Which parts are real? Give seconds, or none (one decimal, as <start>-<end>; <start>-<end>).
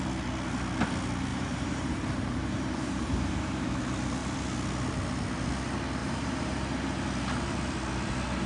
0.0-1.3; 3.7-6.0; 6.8-8.5